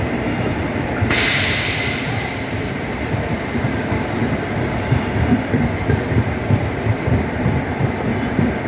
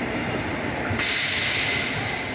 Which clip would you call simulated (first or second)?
first